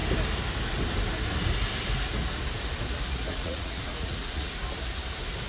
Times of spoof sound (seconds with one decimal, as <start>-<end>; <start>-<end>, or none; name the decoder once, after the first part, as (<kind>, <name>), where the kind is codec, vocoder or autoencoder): 3.3-4.5 (vocoder, Vocos)